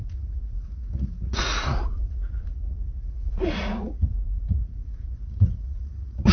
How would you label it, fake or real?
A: fake